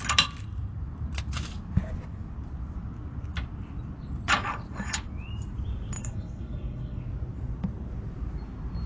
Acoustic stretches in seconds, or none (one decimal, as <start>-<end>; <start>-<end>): 0.0-6.0; 7.0-8.9